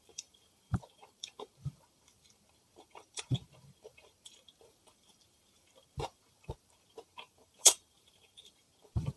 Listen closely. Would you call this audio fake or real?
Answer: fake